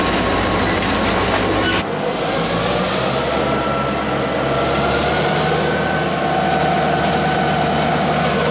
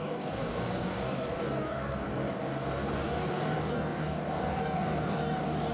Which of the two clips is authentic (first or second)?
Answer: first